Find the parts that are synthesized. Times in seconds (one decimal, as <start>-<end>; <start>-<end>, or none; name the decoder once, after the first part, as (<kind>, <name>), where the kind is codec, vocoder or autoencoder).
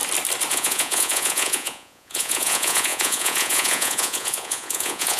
0.5-5.2 (vocoder, Vocos)